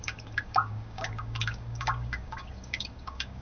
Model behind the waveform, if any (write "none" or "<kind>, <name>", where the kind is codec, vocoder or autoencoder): codec, DAC